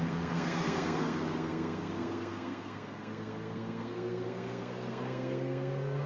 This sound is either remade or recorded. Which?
remade